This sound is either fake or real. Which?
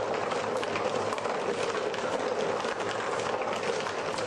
real